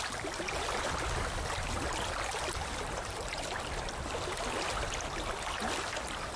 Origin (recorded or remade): recorded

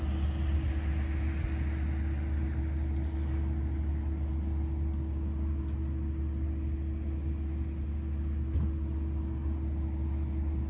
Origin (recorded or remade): recorded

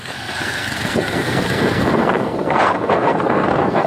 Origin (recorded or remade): remade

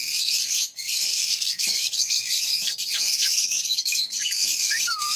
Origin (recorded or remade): remade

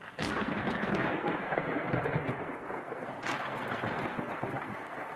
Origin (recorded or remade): remade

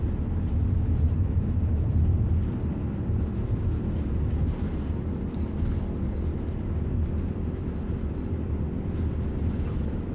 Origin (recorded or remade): recorded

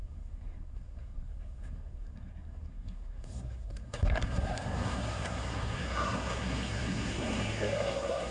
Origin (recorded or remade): remade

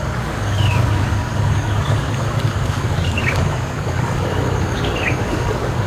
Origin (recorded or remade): remade